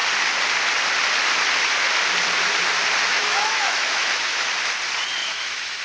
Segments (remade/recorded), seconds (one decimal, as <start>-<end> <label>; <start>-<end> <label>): 0.0-3.1 recorded; 3.1-4.5 remade; 4.5-5.2 recorded; 5.2-5.8 remade